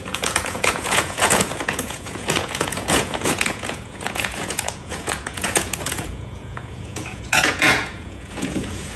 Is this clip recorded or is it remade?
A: remade